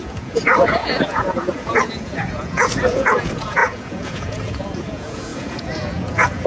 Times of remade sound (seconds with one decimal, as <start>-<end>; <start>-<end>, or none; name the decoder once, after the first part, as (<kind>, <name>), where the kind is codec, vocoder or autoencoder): 0.0-6.5 (vocoder, Vocos)

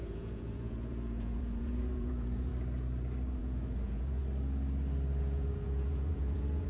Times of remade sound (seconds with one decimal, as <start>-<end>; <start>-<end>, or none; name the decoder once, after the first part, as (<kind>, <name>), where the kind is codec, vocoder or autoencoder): 0.0-2.5 (vocoder, Vocos); 3.4-4.2; 5.2-6.7

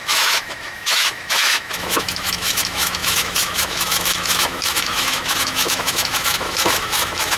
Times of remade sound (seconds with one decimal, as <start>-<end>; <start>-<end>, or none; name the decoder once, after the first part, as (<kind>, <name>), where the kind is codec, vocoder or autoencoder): 0.0-7.4 (autoencoder, DAC-VAE)

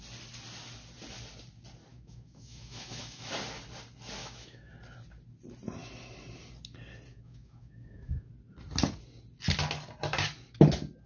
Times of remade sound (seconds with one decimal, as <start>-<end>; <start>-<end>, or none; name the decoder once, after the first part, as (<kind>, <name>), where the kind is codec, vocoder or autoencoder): 1.9-3.3 (autoencoder, DAC-VAE); 4.2-4.7; 7.1-8.3